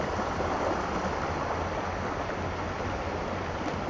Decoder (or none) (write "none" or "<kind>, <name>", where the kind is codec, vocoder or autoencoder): none